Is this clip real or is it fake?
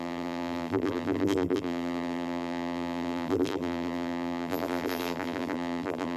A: fake